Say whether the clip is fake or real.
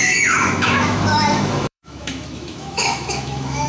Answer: fake